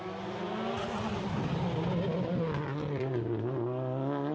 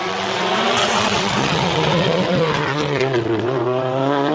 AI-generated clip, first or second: second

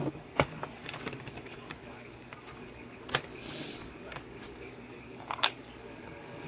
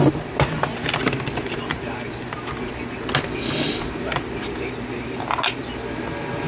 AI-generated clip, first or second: first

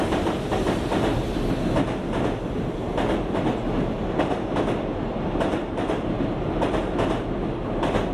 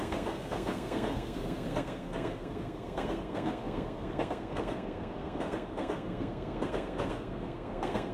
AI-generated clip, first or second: second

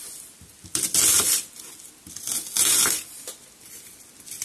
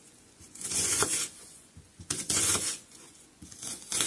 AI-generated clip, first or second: second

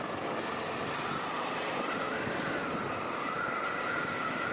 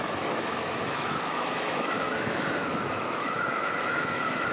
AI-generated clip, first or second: second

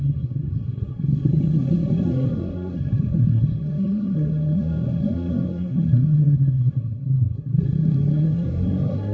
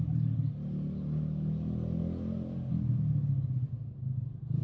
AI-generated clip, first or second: first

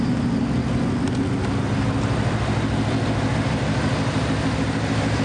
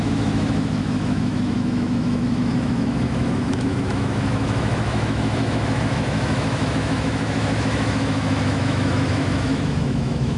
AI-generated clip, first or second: second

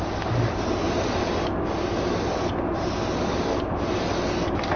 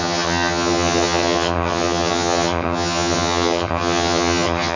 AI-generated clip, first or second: second